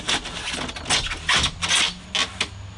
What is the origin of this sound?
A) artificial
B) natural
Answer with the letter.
B